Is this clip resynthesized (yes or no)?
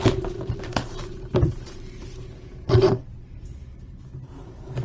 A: yes